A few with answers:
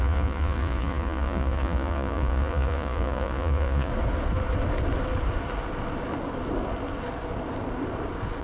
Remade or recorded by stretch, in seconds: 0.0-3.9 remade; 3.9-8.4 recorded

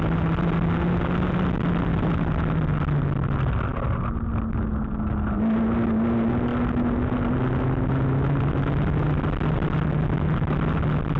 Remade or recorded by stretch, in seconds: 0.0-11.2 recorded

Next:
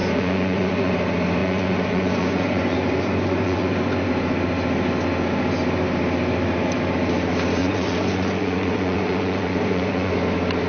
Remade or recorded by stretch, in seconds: 0.0-0.9 remade; 0.9-1.4 recorded; 1.4-4.1 remade; 4.1-7.6 recorded; 7.6-10.1 remade; 10.1-10.7 recorded

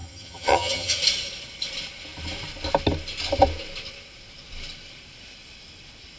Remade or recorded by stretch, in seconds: 0.0-1.0 remade; 1.0-6.2 recorded

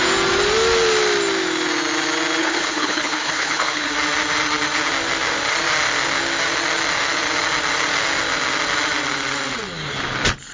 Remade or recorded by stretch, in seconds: 0.0-2.4 recorded; 2.4-3.9 remade; 3.9-10.5 recorded